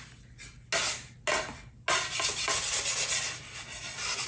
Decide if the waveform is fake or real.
real